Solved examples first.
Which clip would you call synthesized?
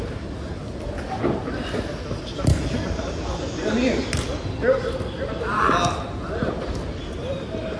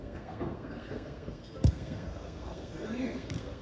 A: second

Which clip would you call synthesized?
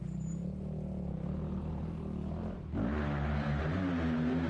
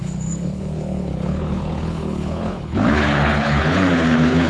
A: second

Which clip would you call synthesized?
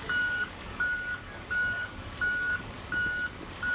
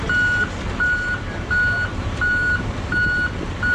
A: first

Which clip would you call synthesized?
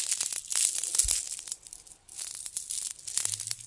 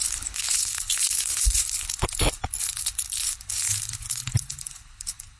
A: second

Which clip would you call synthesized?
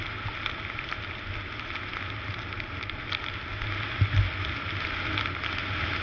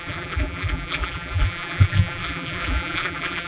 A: second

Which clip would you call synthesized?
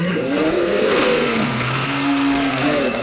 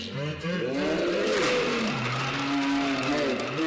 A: first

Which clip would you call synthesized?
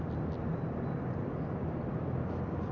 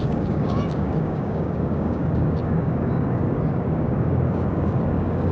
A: second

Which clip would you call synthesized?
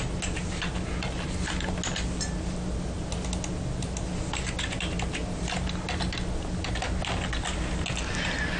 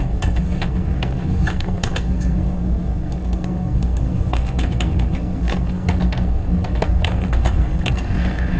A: second